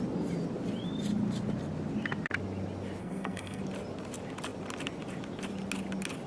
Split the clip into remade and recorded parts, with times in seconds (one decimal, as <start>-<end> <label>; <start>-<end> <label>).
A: 0.0-3.0 recorded; 3.0-3.6 remade; 3.6-6.3 recorded